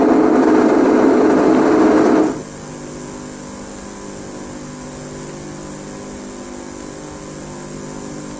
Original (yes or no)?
yes